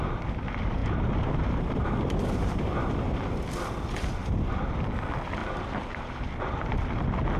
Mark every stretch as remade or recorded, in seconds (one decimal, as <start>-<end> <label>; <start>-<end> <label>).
0.0-0.8 recorded; 0.8-3.3 remade; 3.3-4.2 recorded; 4.2-4.7 remade; 4.7-5.4 recorded; 5.4-6.6 remade; 6.6-7.4 recorded

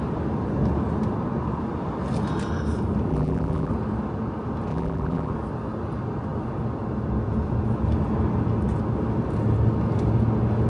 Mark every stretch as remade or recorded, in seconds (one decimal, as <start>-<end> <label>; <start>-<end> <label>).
0.0-3.1 recorded; 3.1-3.7 remade; 3.7-4.7 recorded; 4.7-5.3 remade; 5.3-10.7 recorded

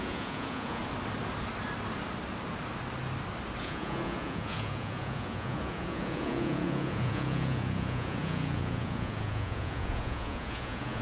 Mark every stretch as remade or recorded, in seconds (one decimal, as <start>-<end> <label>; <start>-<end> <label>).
0.0-0.8 remade; 0.8-3.6 recorded; 3.6-11.0 remade

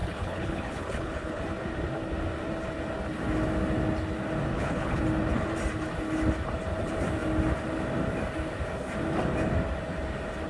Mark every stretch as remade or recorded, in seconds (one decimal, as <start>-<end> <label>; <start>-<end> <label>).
0.0-1.4 remade; 1.4-4.5 recorded; 4.5-5.0 remade; 5.0-10.5 recorded